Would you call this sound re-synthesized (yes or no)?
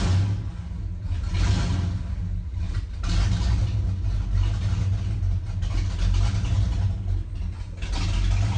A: no